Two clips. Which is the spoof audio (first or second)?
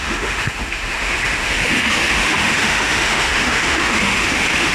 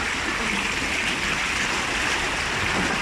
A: first